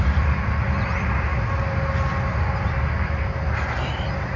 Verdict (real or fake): real